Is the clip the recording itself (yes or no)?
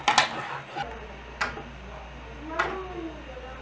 yes